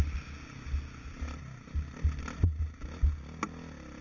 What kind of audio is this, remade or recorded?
recorded